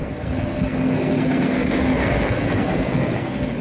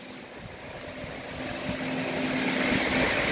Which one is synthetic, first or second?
first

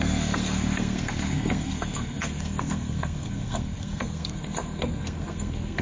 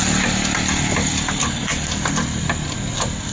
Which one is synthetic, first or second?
first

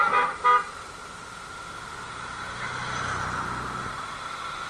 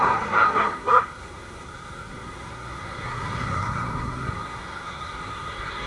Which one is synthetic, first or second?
second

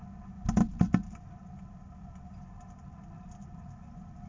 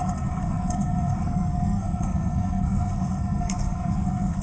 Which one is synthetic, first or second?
second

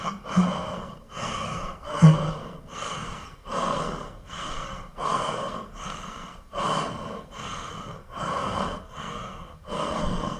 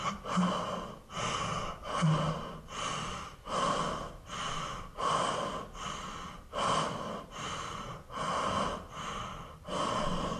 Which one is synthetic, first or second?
first